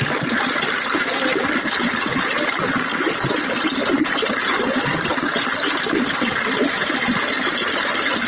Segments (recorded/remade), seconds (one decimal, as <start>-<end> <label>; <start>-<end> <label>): 0.0-8.3 recorded